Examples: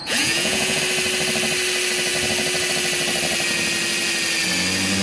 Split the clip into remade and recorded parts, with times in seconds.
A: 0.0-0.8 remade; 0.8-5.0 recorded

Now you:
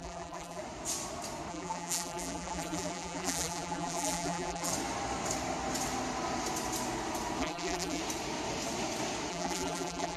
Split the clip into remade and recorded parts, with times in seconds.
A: 0.0-0.6 remade; 0.6-1.5 recorded; 1.5-4.7 remade; 4.7-7.4 recorded; 7.4-8.0 remade; 8.0-9.3 recorded; 9.3-10.2 remade

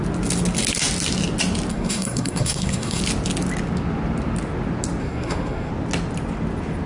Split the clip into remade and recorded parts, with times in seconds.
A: 0.0-1.7 recorded; 1.7-3.0 remade; 3.0-5.0 recorded; 5.0-5.7 remade; 5.7-6.9 recorded